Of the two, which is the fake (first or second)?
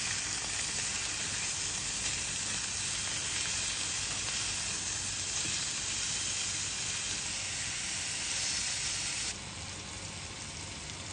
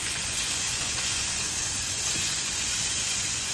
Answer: second